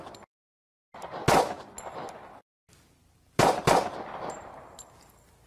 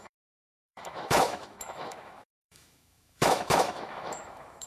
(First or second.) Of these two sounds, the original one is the first